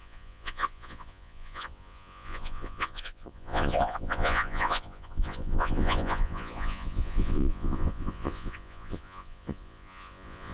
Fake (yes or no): yes